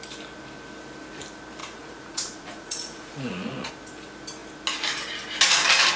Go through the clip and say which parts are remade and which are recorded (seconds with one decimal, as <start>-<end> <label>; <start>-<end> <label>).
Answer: 0.0-1.6 recorded; 1.6-3.7 remade; 3.7-6.0 recorded